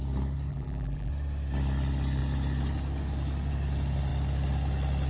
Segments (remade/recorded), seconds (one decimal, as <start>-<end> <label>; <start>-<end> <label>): 0.0-0.5 recorded; 0.5-1.1 remade; 1.1-5.1 recorded

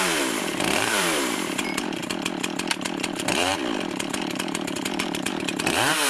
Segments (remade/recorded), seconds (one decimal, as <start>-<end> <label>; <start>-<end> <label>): 0.0-2.0 remade; 2.0-3.1 recorded; 3.1-3.5 remade; 3.5-4.1 recorded; 4.1-6.1 remade